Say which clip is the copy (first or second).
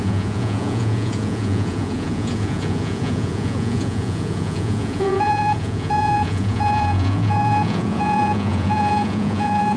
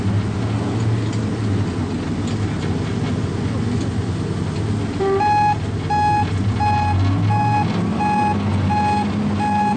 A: first